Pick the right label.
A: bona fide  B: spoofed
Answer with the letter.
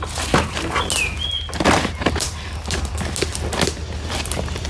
A